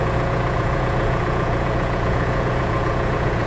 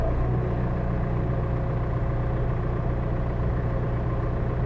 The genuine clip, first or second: second